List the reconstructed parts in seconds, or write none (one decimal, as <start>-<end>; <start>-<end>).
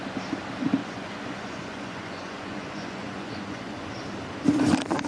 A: 0.8-3.9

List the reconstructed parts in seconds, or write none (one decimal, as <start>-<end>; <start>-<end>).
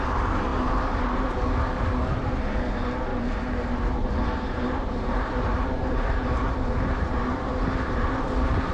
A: 3.1-8.0